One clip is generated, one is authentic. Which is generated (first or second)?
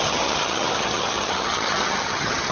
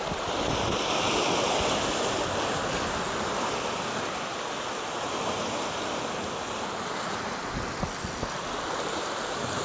first